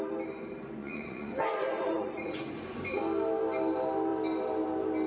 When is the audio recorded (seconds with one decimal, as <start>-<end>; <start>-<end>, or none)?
0.0-0.8; 3.0-5.1